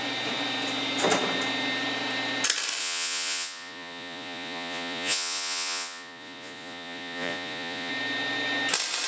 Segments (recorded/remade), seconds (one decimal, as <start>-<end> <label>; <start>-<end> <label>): 0.0-2.8 recorded; 2.8-7.9 remade; 7.9-9.1 recorded